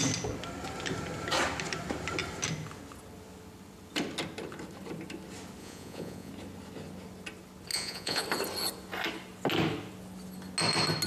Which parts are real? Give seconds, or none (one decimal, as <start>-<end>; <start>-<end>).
0.0-5.6; 6.3-7.7; 8.2-11.1